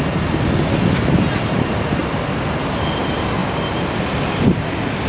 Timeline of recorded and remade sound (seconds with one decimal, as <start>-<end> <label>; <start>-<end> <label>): 0.0-2.0 recorded; 2.0-3.0 remade; 3.0-3.4 recorded; 3.4-3.9 remade; 3.9-5.1 recorded